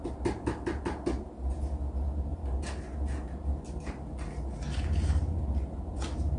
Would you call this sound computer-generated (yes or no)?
no